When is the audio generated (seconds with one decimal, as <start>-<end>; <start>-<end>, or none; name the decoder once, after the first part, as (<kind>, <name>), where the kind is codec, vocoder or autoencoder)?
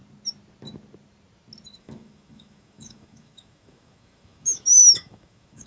1.8-5.7 (autoencoder, DAC-VAE)